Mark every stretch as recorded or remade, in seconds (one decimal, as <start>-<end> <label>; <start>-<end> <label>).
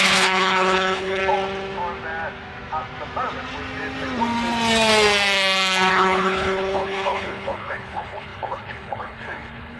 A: 0.0-1.2 remade; 1.2-5.9 recorded; 5.9-9.8 remade